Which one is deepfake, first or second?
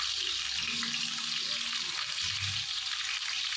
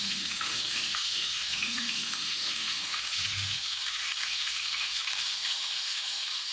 second